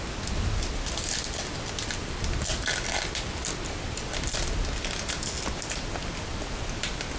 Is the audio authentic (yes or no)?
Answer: yes